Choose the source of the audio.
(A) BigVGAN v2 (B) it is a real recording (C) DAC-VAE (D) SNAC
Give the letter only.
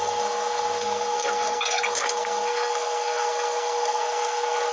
D